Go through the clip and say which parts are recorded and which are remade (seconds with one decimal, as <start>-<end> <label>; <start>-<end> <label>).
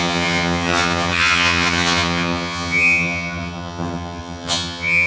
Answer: 0.0-5.1 remade